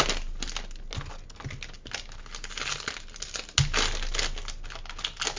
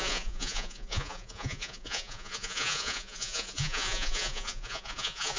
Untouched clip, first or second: first